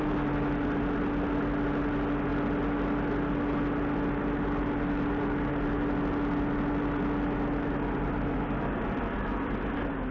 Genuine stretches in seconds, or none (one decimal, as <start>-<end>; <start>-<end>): 0.0-10.1